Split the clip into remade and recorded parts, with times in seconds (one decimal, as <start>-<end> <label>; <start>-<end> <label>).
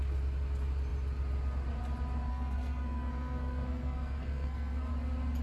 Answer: 0.0-2.3 recorded; 2.3-4.9 remade; 4.9-5.4 recorded